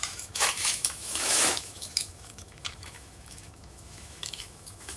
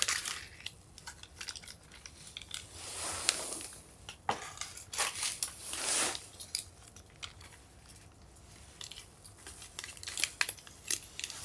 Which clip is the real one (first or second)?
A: second